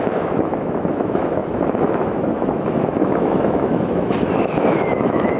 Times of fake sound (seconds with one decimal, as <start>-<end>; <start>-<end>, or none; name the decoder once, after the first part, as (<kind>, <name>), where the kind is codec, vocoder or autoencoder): 0.0-5.4 (autoencoder, DAC-VAE)